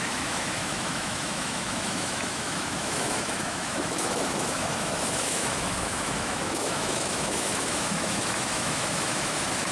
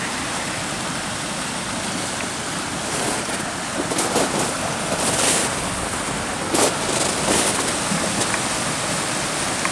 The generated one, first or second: first